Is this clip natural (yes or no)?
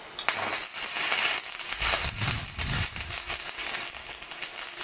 yes